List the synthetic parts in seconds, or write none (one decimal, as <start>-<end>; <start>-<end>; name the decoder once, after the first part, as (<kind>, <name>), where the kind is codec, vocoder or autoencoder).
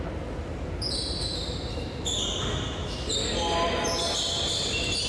2.5-3.1 (autoencoder, DAC-VAE)